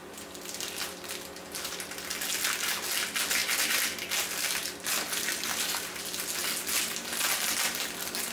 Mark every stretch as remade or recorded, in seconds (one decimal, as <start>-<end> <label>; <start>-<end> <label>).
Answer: 0.0-8.3 recorded